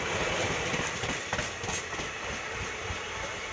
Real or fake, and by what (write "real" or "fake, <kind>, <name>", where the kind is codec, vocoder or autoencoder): real